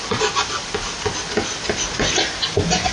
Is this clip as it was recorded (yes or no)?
yes